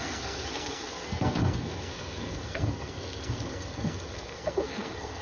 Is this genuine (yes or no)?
no